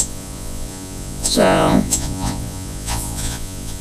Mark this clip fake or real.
fake